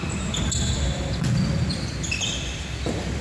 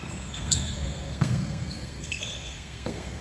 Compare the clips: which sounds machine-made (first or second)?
second